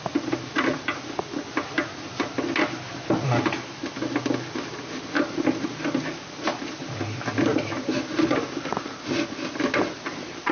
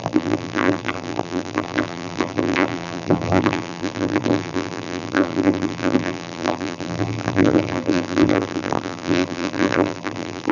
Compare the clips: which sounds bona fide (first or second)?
first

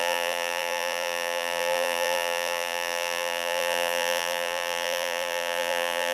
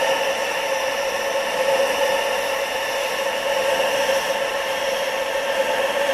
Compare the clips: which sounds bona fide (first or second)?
second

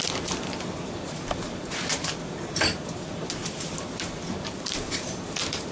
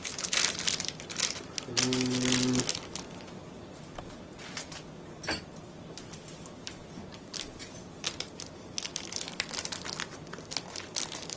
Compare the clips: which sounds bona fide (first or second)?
second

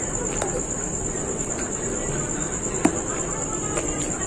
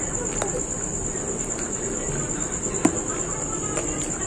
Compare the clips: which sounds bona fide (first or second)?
second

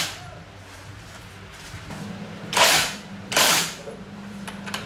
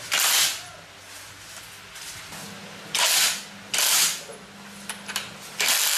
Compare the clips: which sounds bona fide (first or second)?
second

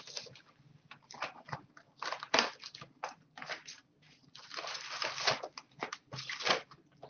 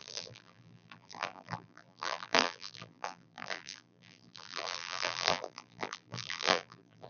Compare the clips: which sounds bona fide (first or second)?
first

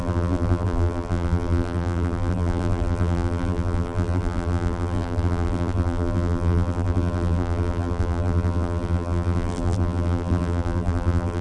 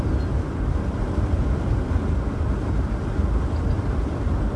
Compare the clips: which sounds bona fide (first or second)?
second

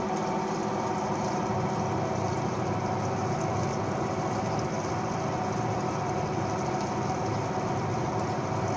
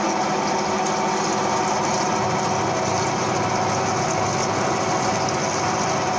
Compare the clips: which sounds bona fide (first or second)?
second